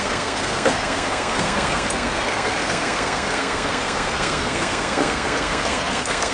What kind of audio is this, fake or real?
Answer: fake